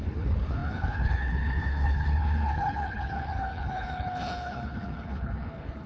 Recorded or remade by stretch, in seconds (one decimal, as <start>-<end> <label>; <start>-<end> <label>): 0.0-5.9 remade